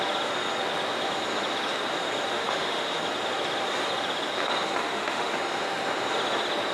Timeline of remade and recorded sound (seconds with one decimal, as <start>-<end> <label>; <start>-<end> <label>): 0.0-2.3 recorded; 2.3-3.0 remade; 3.0-4.8 recorded; 4.8-5.3 remade; 5.3-6.7 recorded